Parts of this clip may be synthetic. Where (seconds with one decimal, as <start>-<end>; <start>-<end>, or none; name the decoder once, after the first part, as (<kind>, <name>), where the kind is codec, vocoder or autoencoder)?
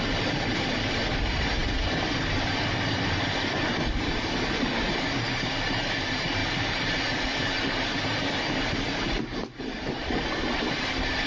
none